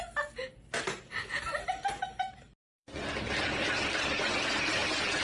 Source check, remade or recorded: recorded